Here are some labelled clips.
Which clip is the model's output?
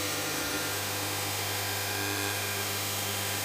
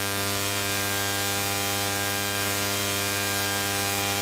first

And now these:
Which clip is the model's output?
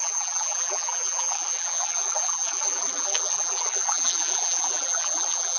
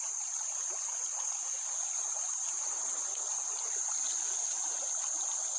first